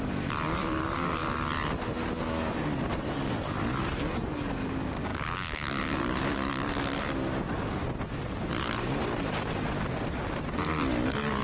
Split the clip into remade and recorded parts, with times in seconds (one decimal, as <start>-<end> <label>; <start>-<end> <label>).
0.0-2.9 recorded; 2.9-4.0 remade; 4.0-11.4 recorded